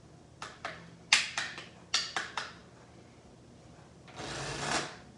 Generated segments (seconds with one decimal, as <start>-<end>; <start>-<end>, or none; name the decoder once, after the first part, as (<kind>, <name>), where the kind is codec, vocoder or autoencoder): none